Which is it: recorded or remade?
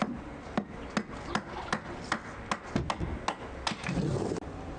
recorded